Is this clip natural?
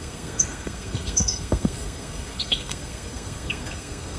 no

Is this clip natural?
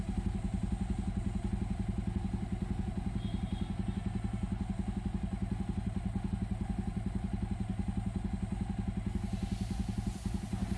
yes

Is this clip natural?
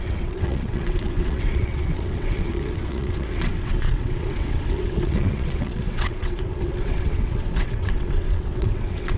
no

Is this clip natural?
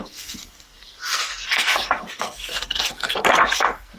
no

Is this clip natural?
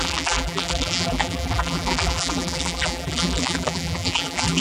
no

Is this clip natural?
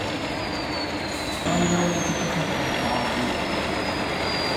yes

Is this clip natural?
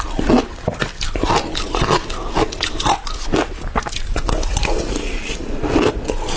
yes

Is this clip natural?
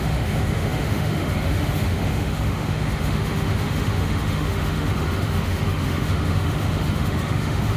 no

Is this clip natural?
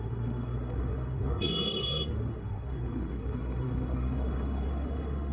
no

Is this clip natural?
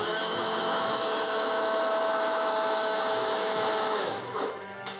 no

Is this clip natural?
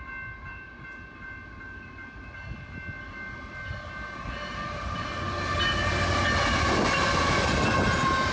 yes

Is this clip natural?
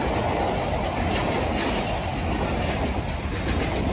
yes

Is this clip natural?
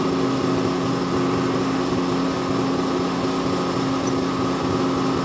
yes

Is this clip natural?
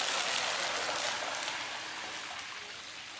yes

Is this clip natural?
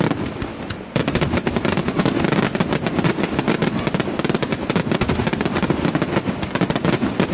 yes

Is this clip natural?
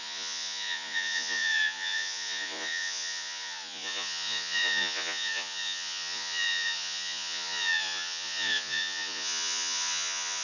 no